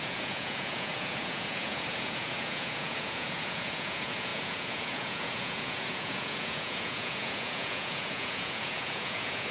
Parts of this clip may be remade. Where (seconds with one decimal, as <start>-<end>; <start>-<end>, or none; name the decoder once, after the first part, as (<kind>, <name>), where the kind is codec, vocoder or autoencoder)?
0.0-9.5 (vocoder, Vocos)